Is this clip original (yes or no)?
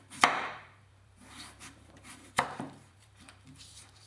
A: no